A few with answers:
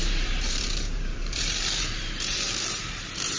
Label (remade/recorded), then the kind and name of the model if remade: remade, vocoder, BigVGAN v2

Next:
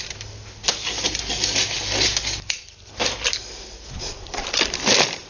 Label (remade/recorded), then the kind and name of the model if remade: recorded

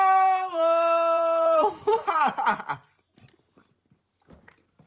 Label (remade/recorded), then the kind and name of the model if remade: remade, vocoder, BigVGAN v2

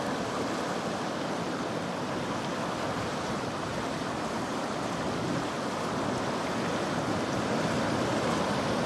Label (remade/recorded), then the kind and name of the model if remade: recorded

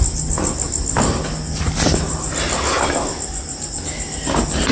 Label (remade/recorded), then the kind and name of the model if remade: recorded